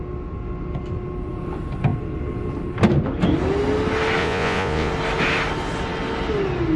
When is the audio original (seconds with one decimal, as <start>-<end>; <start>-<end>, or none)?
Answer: 0.0-4.2; 4.9-6.8